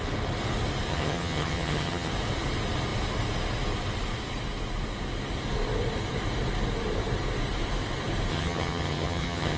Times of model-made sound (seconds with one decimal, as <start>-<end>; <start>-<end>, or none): 0.9-2.1; 8.3-9.6